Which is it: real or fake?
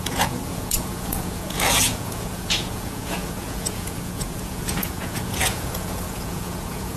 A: fake